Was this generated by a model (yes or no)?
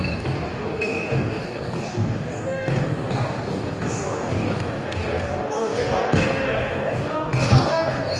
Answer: yes